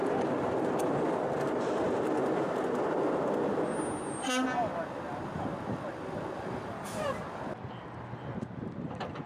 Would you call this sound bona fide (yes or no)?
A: yes